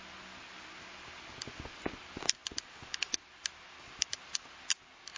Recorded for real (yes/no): yes